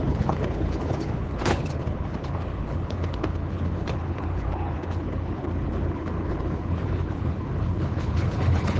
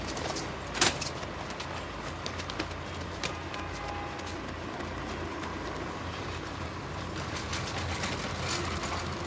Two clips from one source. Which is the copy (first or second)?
first